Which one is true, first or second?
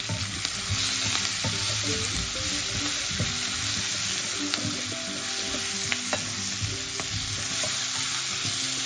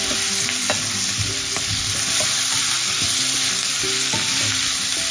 first